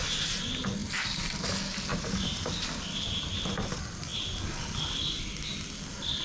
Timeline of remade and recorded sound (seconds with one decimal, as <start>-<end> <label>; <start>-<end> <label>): 0.0-1.9 recorded; 1.9-2.5 remade; 2.5-6.2 recorded